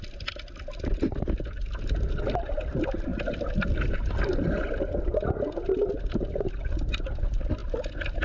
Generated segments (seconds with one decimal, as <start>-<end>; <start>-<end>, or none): none